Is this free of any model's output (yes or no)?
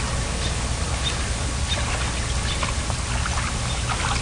yes